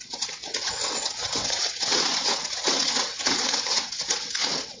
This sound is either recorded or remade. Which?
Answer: remade